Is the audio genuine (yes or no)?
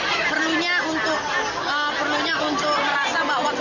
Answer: yes